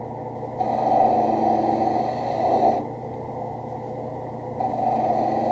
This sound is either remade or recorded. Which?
recorded